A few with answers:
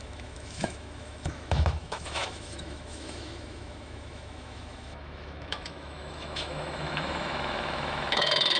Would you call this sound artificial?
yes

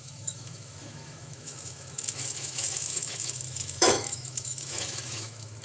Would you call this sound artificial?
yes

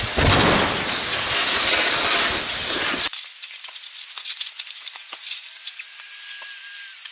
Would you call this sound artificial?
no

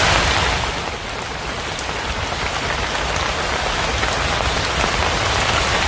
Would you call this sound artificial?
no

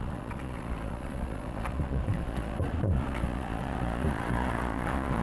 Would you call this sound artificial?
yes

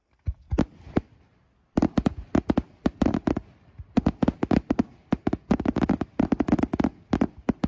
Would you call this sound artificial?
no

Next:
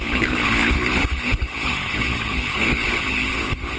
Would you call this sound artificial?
yes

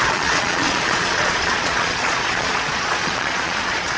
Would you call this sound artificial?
yes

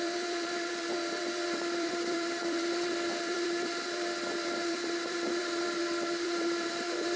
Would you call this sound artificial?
yes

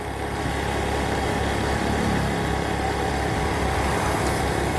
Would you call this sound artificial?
no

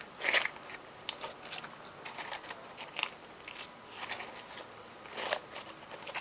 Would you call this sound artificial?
no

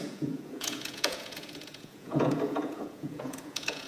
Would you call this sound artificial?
yes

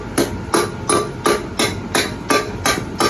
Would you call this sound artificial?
no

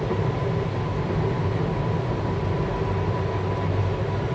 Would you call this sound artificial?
no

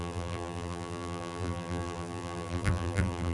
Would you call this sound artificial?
yes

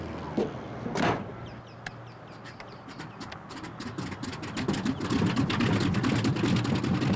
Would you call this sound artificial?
no